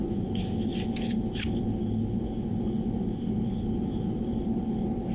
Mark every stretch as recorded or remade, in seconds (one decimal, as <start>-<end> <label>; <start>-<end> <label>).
0.0-5.1 recorded